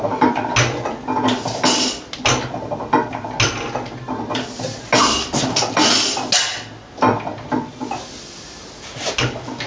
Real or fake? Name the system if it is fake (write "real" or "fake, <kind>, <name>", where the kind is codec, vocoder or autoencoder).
real